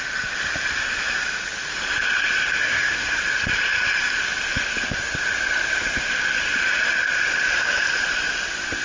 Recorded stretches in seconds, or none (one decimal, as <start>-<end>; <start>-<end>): 0.0-2.6; 3.2-8.8

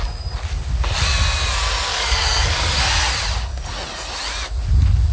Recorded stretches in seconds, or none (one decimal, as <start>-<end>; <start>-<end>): 0.0-1.9; 2.7-5.1

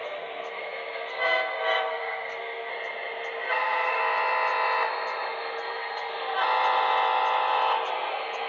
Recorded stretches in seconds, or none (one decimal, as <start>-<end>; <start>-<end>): 2.7-3.5; 4.0-5.6; 6.1-7.9

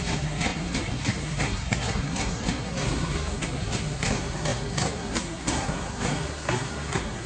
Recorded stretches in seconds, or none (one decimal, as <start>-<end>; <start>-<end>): none

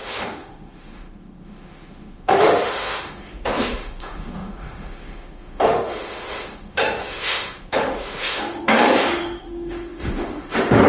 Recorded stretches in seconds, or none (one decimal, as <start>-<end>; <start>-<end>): none

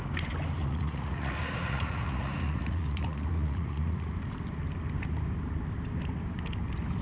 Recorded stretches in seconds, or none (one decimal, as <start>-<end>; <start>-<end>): 0.0-0.6; 4.1-7.0

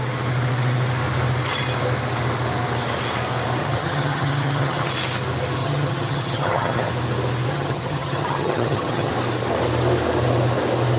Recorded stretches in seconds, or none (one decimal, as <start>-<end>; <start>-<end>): 0.0-3.6; 4.9-5.6; 6.9-7.5; 9.1-11.0

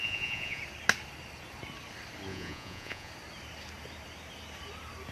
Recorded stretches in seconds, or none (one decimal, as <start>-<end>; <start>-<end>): 0.6-2.3; 3.1-5.1